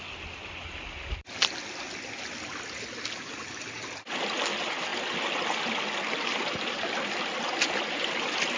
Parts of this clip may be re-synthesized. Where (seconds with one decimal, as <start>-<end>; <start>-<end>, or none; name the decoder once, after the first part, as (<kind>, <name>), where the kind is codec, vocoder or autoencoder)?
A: none